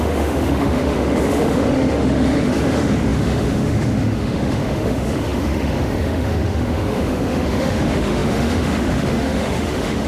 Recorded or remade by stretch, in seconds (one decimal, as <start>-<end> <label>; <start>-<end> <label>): 0.0-10.1 remade